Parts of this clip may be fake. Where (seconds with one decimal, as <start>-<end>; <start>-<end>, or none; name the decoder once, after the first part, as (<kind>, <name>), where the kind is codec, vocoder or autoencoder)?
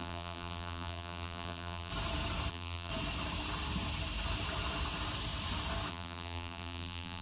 0.0-1.9 (vocoder, BigVGAN v2); 2.5-2.9; 5.9-7.2